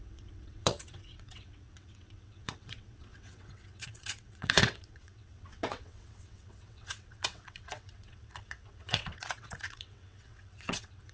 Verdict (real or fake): fake